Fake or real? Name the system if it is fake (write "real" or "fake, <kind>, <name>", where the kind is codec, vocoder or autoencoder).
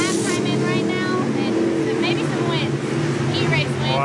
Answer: real